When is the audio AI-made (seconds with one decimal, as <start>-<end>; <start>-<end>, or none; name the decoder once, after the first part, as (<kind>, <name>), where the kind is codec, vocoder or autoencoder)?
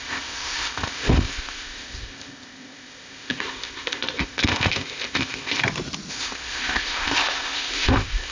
0.0-5.6 (codec, ZipCodec); 6.1-8.3